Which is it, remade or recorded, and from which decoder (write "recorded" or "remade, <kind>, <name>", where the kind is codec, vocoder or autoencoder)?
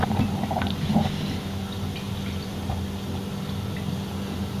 recorded